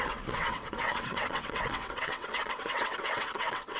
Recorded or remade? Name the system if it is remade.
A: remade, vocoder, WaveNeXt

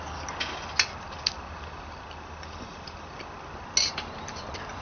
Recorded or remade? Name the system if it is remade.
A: recorded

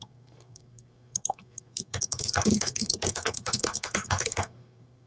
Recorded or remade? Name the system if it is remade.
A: remade, codec, SNAC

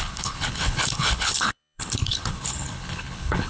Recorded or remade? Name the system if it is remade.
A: remade, codec, HILCodec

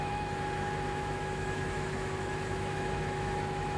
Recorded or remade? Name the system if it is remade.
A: remade, autoencoder, DAC-VAE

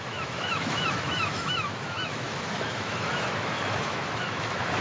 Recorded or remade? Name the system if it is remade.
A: remade, autoencoder, DAC-VAE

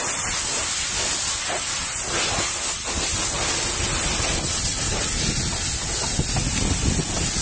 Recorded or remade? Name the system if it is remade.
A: recorded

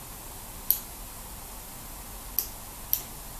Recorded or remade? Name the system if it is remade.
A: recorded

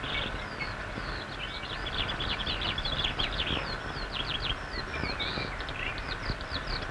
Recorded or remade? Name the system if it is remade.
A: recorded